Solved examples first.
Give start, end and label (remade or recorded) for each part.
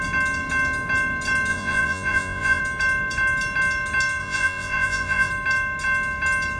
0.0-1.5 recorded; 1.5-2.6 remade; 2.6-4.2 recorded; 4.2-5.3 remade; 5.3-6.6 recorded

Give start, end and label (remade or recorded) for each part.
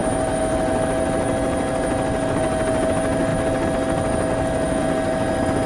0.0-5.7 recorded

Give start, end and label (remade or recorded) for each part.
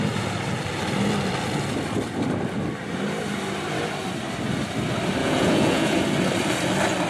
0.0-5.2 recorded; 5.2-6.0 remade; 6.0-7.1 recorded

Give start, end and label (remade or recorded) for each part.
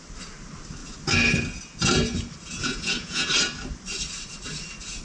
0.0-2.6 recorded; 2.6-3.3 remade; 3.3-5.0 recorded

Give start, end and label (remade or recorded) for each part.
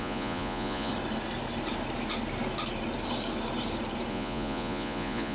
0.0-0.9 remade; 0.9-4.1 recorded; 4.1-5.3 remade